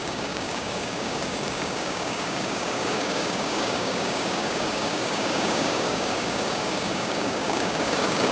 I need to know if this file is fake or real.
fake